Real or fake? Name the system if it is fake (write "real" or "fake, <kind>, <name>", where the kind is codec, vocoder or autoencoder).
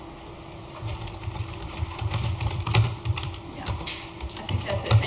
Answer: fake, vocoder, BigVGAN v2